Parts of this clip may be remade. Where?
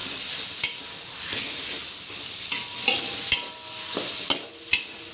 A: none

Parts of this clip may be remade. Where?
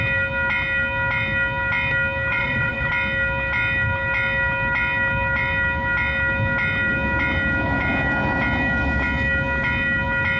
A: 2.3-2.9 (vocoder, WaveNeXt)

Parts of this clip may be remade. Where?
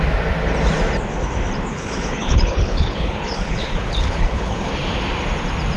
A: 1.7-4.7 (codec, HILCodec)